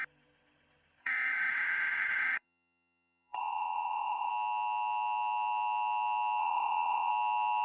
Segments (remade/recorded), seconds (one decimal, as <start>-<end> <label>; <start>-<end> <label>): 0.0-1.0 recorded; 1.0-4.3 remade; 4.3-6.4 recorded; 6.4-7.1 remade; 7.1-7.6 recorded